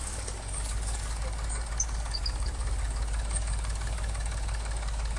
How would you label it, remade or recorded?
remade